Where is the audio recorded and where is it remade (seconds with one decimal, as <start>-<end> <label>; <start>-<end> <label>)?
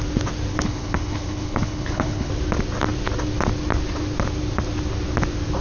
0.0-0.5 recorded; 0.5-2.3 remade; 2.3-5.6 recorded